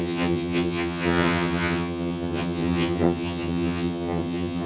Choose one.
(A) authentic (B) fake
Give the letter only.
B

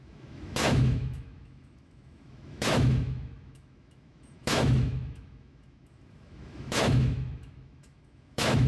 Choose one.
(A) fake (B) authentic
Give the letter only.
A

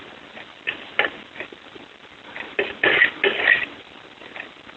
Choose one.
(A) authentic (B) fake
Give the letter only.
A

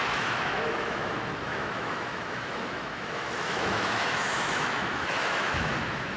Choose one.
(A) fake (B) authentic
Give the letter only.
A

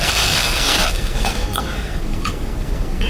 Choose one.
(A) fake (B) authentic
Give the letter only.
A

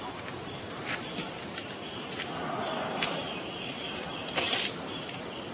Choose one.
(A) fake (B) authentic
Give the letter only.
A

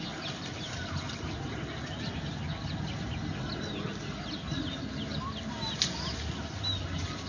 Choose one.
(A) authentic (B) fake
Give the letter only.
A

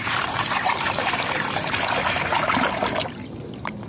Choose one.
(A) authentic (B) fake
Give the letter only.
B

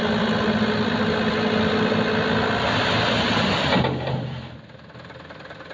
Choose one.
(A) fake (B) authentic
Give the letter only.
B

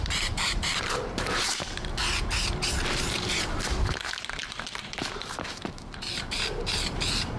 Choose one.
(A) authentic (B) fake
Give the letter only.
B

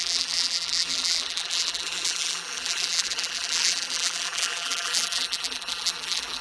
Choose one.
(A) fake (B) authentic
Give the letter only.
A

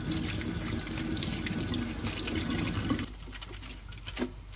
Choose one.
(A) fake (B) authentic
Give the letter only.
B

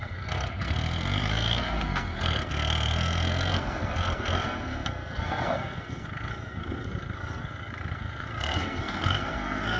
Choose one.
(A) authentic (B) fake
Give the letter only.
B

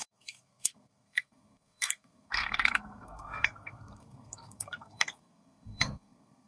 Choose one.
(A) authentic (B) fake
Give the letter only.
B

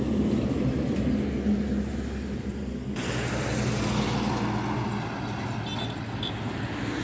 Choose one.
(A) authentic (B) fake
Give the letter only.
A